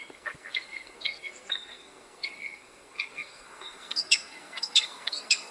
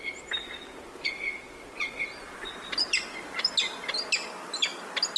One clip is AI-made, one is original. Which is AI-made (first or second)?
first